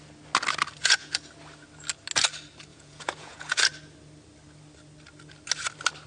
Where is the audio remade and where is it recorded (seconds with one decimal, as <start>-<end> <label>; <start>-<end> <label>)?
0.0-0.8 recorded; 0.8-1.3 remade; 1.3-2.7 recorded; 2.7-3.6 remade; 3.6-6.1 recorded